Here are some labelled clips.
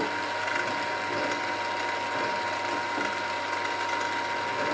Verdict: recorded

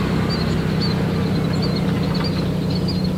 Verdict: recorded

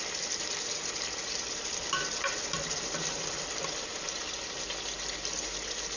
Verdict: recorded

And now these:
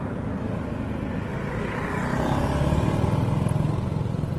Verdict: recorded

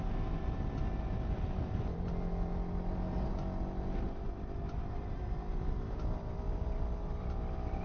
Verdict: recorded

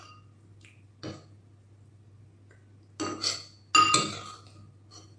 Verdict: recorded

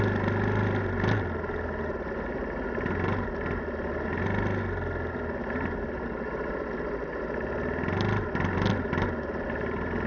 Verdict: recorded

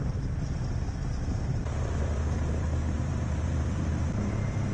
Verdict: remade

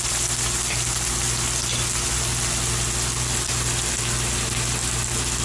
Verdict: recorded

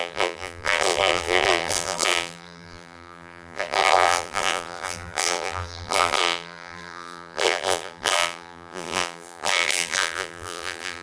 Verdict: remade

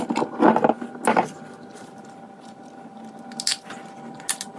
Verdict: recorded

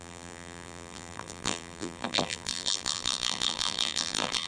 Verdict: remade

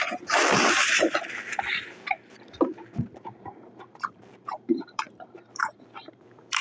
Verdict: remade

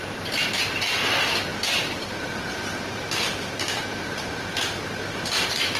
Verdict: remade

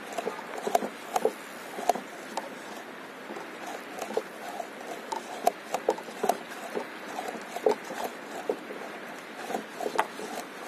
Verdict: recorded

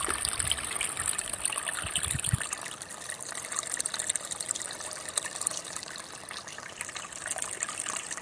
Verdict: recorded